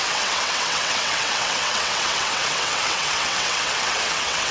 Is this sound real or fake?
fake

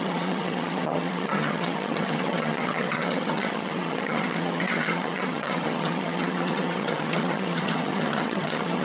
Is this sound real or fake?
fake